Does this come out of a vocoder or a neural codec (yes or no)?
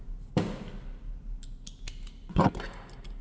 no